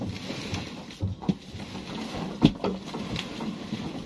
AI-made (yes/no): no